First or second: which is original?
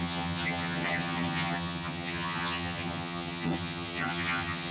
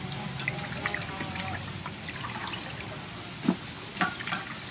second